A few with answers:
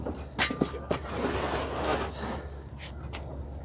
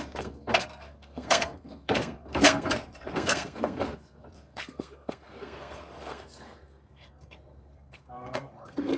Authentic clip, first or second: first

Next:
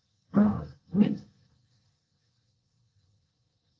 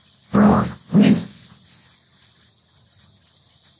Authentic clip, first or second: second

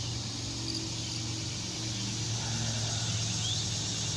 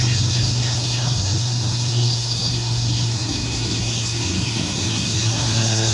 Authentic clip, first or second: first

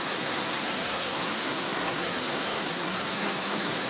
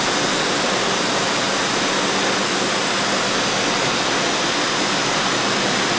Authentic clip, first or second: second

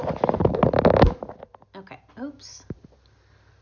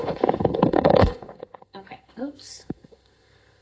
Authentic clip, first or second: first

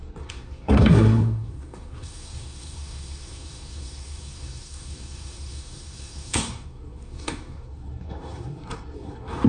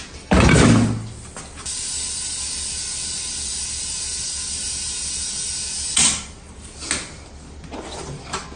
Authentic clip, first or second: second